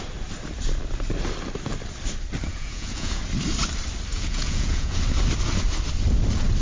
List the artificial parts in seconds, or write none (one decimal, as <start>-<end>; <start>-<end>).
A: 2.5-3.2; 4.1-5.0

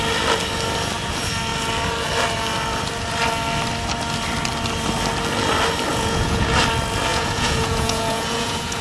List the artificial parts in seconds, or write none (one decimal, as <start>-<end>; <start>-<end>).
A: 5.9-6.5; 7.1-8.8

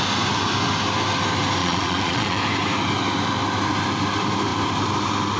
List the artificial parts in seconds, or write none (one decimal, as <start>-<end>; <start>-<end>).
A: 1.6-2.4

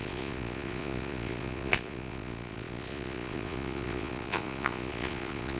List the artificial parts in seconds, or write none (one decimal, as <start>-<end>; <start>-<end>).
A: 0.0-5.6